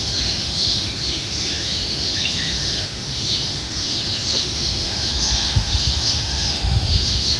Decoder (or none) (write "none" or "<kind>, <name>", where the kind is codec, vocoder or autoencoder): autoencoder, DAC-VAE